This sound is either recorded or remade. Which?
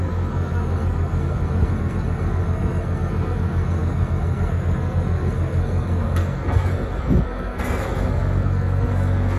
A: remade